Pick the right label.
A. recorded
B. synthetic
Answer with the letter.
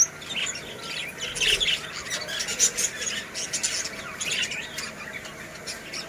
A